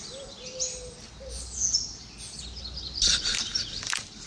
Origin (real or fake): real